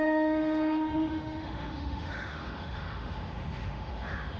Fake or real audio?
fake